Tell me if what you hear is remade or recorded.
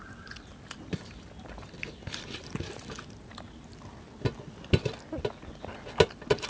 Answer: recorded